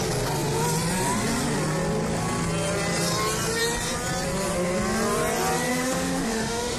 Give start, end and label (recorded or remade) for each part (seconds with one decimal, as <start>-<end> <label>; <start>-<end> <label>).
0.0-5.7 recorded; 5.7-6.8 remade